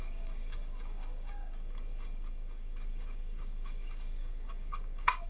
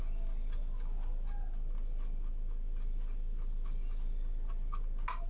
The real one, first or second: second